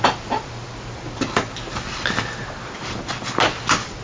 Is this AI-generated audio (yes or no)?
no